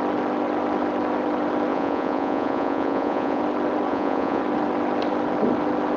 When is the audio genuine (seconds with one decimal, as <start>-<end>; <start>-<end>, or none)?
0.0-1.7; 3.4-3.9; 4.4-6.0